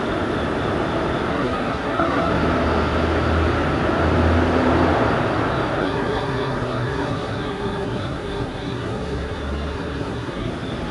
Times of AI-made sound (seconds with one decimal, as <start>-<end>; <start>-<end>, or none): 1.3-2.3; 5.8-10.5